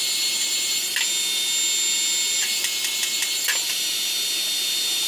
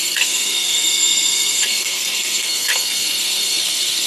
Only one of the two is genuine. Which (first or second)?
first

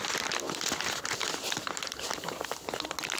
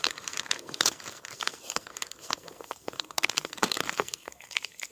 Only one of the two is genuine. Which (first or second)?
first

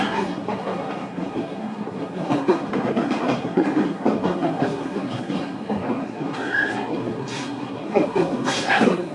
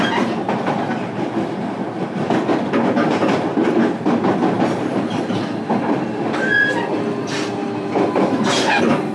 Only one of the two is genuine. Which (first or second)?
second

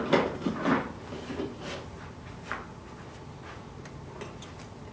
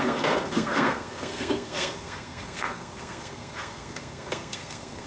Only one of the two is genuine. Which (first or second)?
first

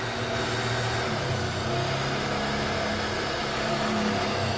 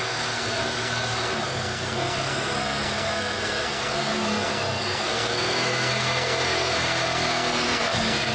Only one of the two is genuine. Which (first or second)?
first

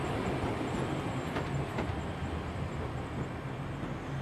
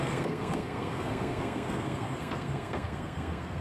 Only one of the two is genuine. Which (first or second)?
first